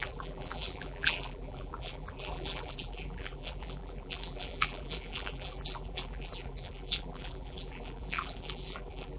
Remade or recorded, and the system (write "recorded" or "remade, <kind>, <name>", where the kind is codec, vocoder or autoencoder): remade, vocoder, BigVGAN v2